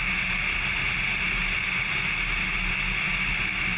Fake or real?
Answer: real